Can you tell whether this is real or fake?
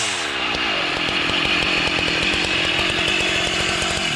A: real